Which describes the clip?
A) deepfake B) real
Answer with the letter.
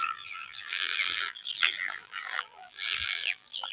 A